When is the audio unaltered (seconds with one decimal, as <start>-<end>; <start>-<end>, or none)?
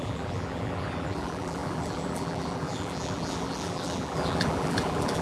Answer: none